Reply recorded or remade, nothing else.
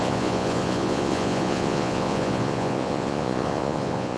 remade